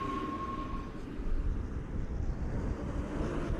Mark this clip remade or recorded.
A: recorded